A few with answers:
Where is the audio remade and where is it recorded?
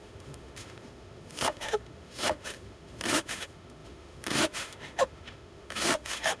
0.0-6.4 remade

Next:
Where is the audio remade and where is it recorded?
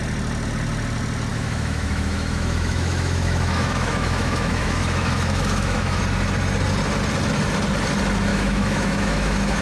0.0-1.3 recorded; 1.3-6.0 remade; 6.0-8.3 recorded; 8.3-9.6 remade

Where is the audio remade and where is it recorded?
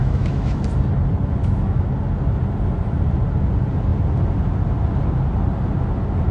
0.0-0.6 remade; 0.6-1.4 recorded; 1.4-1.9 remade; 1.9-6.3 recorded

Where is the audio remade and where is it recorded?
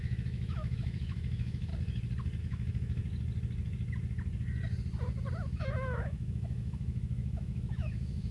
0.0-1.7 remade; 1.7-2.4 recorded; 2.4-3.0 remade; 3.0-5.5 recorded; 5.5-8.3 remade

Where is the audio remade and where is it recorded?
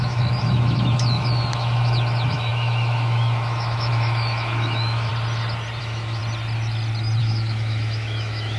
0.0-5.1 remade; 5.1-5.8 recorded; 5.8-6.2 remade; 6.2-7.2 recorded; 7.2-8.6 remade